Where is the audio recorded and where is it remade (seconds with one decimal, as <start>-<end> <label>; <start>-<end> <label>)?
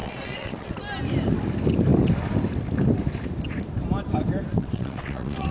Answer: 0.0-0.7 remade; 0.7-4.5 recorded; 4.5-5.5 remade